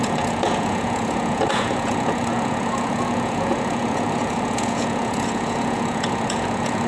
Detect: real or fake fake